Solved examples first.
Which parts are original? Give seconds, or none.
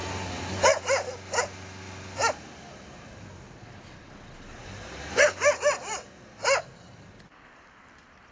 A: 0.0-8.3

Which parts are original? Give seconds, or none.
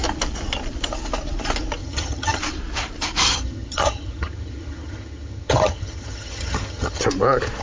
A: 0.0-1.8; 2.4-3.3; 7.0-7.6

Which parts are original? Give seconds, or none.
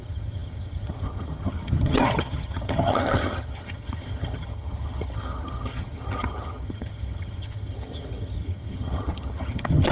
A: none